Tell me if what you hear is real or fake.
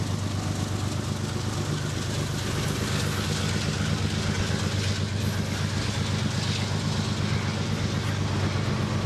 real